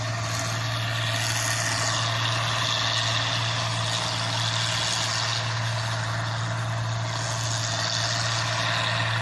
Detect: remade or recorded recorded